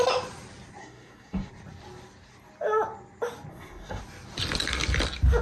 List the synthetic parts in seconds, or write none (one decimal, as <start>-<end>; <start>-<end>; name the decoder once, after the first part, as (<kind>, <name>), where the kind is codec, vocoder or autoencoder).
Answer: 0.8-1.5 (codec, SNAC); 3.5-4.0